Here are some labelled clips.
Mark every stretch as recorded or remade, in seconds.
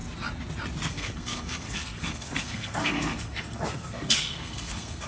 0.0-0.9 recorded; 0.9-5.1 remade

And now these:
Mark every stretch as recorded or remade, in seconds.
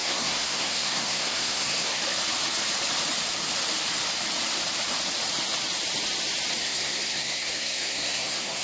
0.0-2.0 remade; 2.0-6.6 recorded; 6.6-8.6 remade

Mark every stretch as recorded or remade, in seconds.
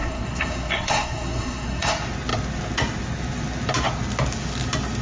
0.0-1.9 remade; 1.9-5.0 recorded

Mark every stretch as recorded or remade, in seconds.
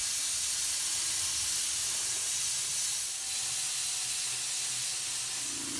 0.0-5.8 recorded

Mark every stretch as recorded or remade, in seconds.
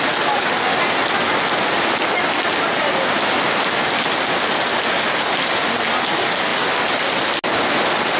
0.0-8.2 recorded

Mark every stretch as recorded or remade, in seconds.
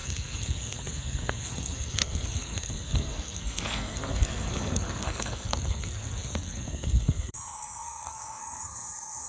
0.0-9.3 remade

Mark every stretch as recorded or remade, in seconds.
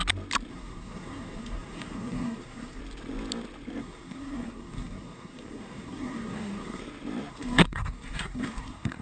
0.0-0.5 recorded; 0.5-2.8 remade; 2.8-3.8 recorded; 3.8-6.8 remade; 6.8-7.3 recorded; 7.3-9.0 remade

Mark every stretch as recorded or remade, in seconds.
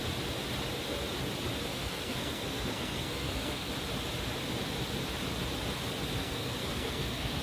0.0-1.7 recorded; 1.7-3.7 remade; 3.7-6.2 recorded; 6.2-7.4 remade